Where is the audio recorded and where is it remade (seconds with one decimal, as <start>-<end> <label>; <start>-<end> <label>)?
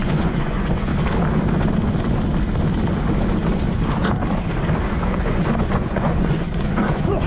0.0-0.9 remade; 0.9-4.9 recorded; 4.9-7.3 remade